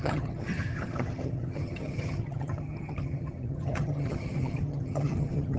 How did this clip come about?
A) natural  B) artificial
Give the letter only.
B